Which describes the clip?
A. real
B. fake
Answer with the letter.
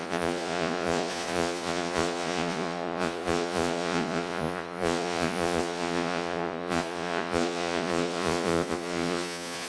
B